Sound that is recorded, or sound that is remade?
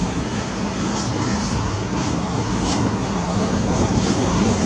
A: remade